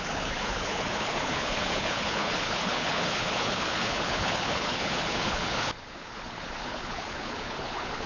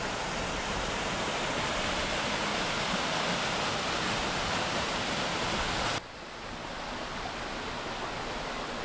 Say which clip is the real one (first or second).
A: second